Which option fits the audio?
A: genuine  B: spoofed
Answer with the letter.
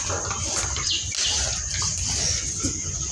A